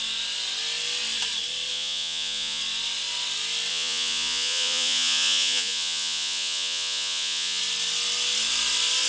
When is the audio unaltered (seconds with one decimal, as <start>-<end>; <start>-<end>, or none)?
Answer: 0.0-1.7; 2.6-3.7; 7.6-9.1